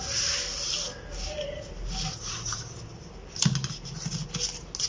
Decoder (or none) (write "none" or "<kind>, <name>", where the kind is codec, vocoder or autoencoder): none